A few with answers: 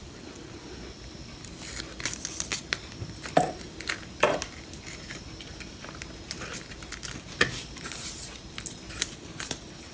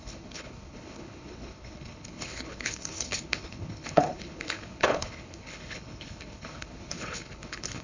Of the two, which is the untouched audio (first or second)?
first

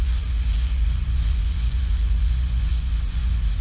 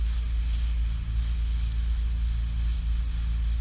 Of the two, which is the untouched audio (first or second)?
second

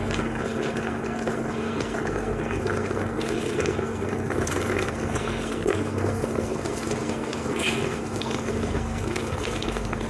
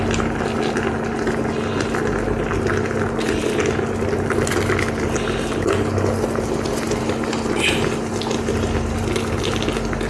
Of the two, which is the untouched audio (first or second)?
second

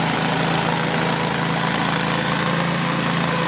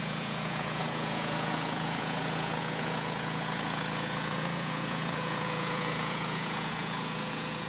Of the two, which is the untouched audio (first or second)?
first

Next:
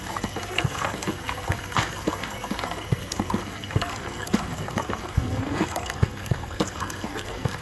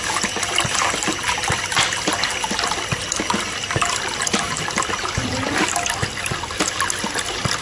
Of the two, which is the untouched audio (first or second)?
second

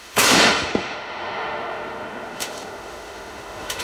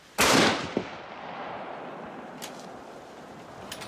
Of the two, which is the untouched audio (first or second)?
second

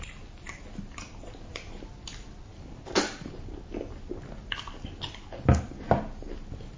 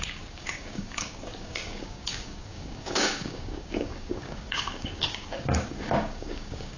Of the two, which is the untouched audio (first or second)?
first